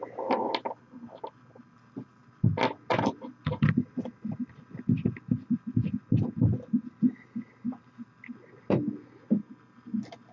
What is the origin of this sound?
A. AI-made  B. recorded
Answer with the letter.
B